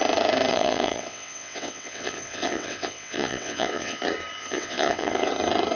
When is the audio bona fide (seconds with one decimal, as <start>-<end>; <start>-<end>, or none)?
0.0-0.5; 4.0-4.4; 5.3-5.8